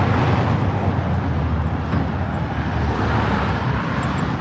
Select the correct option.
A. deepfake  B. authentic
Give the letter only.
B